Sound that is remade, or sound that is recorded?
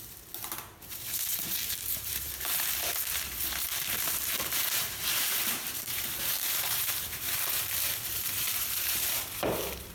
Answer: remade